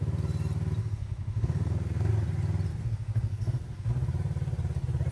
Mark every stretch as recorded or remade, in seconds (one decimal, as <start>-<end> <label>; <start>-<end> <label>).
0.0-0.8 recorded; 0.8-2.1 remade; 2.1-2.7 recorded; 2.7-3.9 remade; 3.9-5.1 recorded